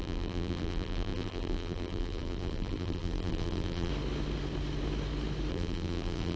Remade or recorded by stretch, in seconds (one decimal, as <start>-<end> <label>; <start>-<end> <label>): 0.0-3.9 remade; 3.9-5.5 recorded; 5.5-6.4 remade